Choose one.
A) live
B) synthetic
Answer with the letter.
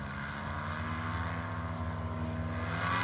A